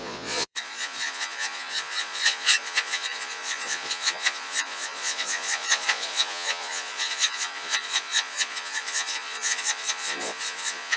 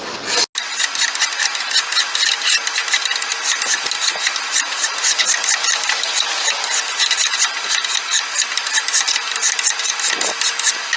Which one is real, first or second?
second